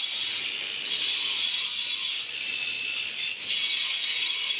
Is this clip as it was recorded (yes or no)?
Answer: yes